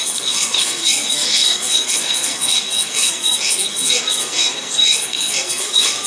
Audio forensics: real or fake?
fake